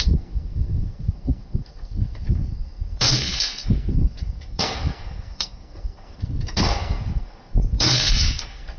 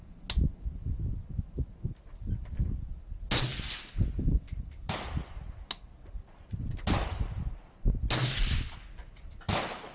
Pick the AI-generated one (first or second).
first